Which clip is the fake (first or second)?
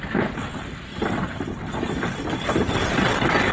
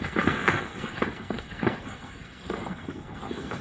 second